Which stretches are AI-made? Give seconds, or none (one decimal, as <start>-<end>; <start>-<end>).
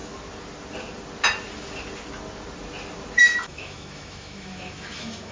3.2-5.3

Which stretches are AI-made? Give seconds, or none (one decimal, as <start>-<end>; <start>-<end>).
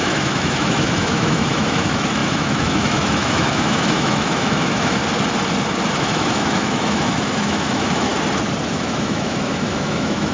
0.0-5.0; 6.0-8.1; 8.7-10.3